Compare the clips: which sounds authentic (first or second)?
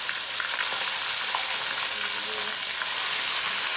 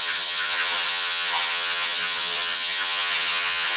first